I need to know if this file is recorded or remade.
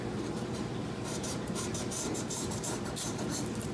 remade